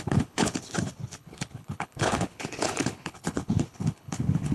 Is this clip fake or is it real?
fake